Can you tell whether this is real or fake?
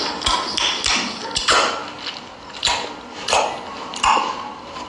real